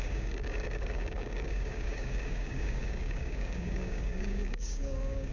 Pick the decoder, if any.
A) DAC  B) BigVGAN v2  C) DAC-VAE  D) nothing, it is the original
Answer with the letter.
A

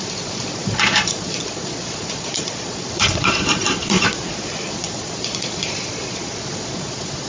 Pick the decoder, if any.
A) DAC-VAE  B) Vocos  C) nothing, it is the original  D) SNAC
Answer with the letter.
B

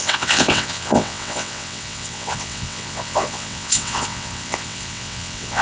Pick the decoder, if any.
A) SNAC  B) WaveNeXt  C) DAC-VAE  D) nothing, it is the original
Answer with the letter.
B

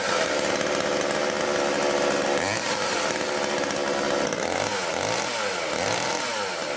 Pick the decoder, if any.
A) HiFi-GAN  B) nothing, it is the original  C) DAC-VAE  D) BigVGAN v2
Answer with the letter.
B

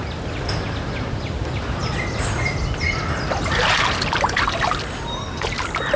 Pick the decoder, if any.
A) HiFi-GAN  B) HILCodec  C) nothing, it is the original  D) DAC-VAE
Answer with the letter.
C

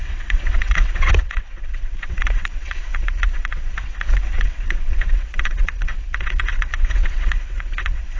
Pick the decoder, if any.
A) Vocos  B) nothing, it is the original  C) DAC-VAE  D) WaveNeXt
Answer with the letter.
D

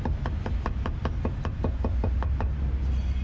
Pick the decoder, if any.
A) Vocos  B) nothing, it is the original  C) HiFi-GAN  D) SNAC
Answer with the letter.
B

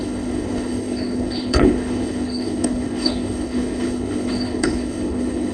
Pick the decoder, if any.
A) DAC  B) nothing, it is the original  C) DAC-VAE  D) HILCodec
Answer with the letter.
D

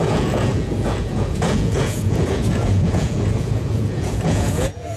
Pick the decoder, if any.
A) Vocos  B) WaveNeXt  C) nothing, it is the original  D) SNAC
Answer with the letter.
A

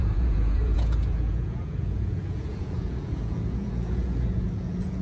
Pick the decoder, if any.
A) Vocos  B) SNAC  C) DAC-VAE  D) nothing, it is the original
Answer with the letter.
A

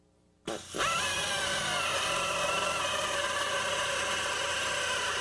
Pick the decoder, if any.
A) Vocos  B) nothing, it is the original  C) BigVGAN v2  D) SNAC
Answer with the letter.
B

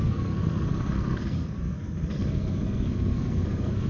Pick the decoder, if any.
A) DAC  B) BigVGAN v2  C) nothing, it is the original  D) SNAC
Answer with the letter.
D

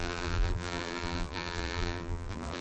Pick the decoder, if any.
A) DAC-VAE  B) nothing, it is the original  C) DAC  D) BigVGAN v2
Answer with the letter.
D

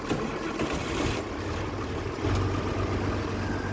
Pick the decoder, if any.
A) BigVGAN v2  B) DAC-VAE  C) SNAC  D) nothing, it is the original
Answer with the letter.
D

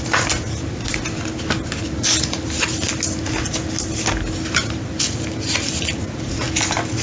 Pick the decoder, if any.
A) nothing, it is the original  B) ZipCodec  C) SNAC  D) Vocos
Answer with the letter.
A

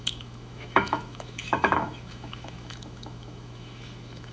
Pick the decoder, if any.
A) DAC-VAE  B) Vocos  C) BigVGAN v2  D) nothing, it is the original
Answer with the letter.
A